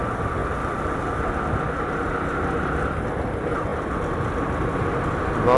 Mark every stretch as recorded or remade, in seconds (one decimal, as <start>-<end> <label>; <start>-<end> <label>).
0.0-5.6 recorded